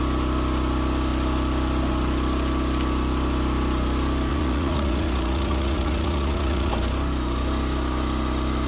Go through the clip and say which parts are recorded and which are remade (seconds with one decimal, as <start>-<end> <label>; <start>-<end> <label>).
0.0-4.3 recorded; 4.3-6.7 remade; 6.7-8.7 recorded